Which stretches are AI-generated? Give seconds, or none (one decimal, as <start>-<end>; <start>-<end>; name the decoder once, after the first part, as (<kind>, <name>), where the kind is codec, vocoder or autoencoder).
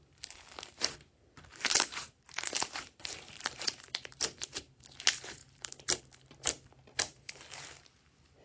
1.5-4.9 (vocoder, BigVGAN v2); 5.4-6.0